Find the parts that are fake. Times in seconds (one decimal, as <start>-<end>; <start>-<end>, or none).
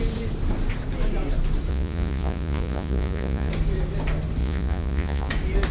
1.7-3.5; 4.4-5.3